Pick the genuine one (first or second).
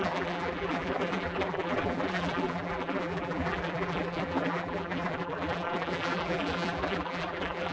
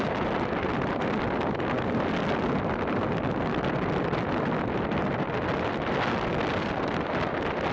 second